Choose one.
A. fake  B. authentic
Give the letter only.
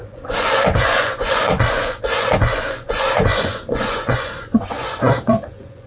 A